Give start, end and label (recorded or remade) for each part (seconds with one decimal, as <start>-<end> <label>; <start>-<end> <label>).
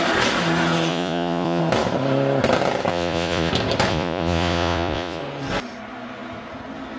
0.0-0.9 recorded; 0.9-1.6 remade; 1.6-2.9 recorded; 2.9-3.5 remade; 3.5-3.9 recorded; 3.9-5.2 remade; 5.2-7.0 recorded